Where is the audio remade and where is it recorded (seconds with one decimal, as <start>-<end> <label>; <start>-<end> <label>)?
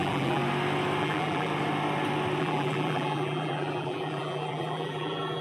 0.0-0.4 remade; 0.4-1.0 recorded; 1.0-1.5 remade; 1.5-2.4 recorded; 2.4-5.4 remade